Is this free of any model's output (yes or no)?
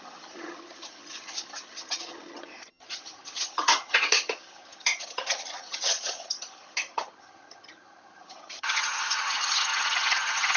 no